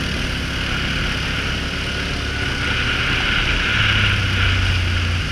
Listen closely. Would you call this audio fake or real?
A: real